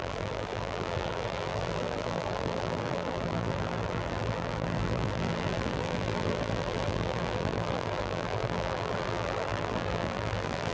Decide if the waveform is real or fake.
fake